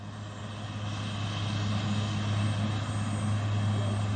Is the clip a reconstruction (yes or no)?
no